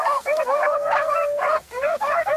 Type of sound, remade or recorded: remade